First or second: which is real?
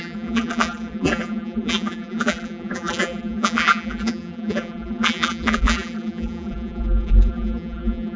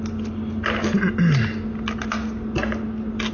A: second